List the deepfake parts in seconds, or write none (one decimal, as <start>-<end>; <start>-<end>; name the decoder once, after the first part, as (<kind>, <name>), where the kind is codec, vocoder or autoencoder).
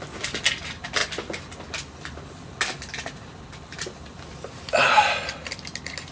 none